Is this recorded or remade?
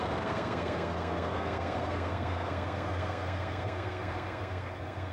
remade